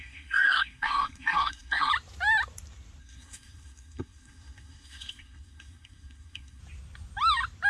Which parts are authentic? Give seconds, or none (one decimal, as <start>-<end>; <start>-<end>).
1.9-3.0; 6.6-7.7